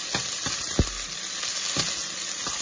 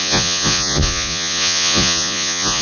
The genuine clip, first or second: first